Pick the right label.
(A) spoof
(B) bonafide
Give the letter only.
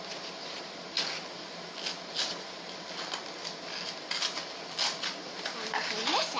B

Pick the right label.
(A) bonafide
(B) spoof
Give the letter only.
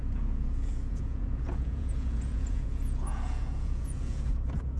B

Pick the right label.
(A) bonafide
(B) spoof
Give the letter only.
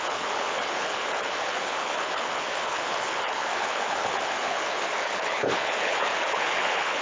B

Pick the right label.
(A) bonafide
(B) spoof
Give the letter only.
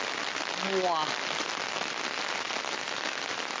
A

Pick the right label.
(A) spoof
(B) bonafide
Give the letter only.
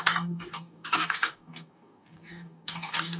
A